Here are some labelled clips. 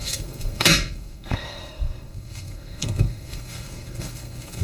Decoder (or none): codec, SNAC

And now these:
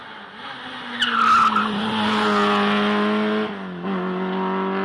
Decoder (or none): none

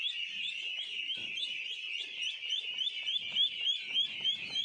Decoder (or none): none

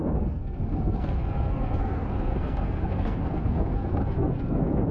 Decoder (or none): codec, SNAC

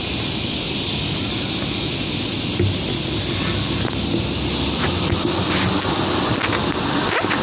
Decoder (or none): none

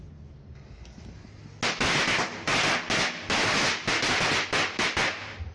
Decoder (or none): none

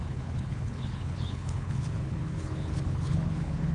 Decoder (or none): codec, HILCodec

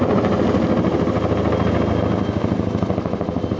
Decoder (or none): none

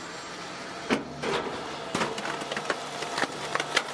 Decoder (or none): none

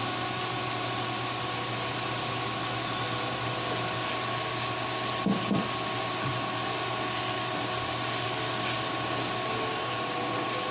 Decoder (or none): none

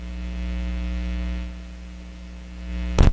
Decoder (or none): none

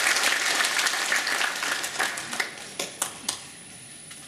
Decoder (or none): none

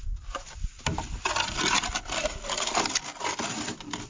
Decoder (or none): none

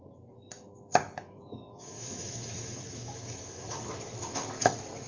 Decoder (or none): autoencoder, DAC-VAE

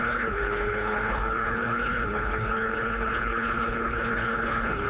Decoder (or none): codec, HILCodec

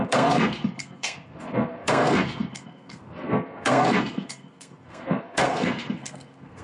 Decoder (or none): codec, SNAC